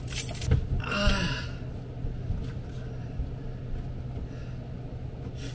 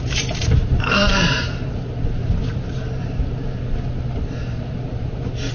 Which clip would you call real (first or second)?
first